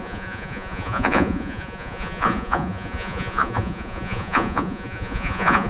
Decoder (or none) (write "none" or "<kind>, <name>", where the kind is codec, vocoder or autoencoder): vocoder, Vocos